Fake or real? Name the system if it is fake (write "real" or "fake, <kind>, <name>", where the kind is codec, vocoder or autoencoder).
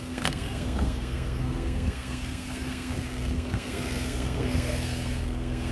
fake, codec, SNAC